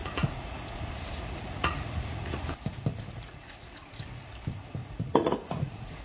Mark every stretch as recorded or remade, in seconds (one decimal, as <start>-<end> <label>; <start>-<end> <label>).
0.0-2.4 remade; 2.4-2.9 recorded; 2.9-4.0 remade; 4.0-4.8 recorded; 4.8-6.0 remade